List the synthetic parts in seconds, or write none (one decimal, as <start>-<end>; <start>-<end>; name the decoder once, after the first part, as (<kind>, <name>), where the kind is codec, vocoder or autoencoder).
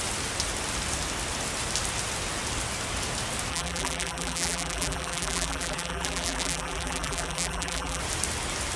3.5-8.0 (vocoder, BigVGAN v2)